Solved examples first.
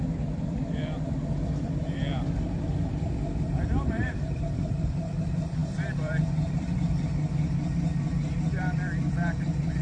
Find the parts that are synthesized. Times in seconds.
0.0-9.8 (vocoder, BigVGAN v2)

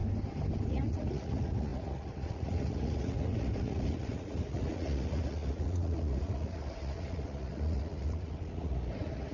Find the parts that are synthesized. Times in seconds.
0.7-9.3 (vocoder, Vocos)

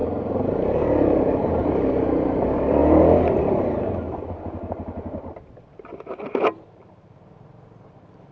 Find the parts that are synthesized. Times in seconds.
0.0-2.8 (vocoder, BigVGAN v2); 4.7-8.3